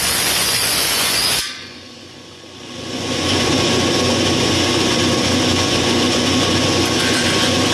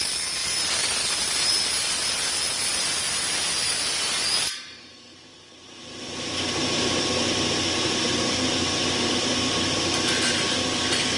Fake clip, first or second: first